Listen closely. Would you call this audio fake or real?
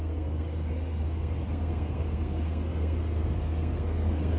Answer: fake